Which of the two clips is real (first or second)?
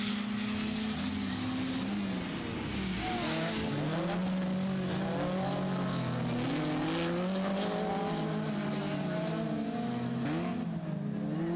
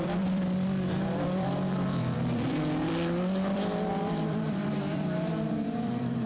first